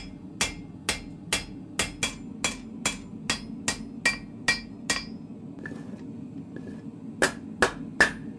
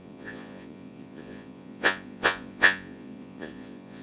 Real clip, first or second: first